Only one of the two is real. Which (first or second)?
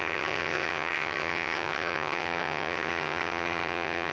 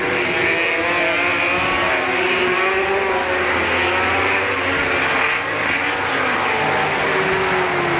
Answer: second